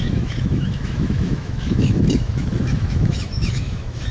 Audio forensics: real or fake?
fake